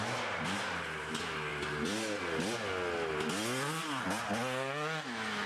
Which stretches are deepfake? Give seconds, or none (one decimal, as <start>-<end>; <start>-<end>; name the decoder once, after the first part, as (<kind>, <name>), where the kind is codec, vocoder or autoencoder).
none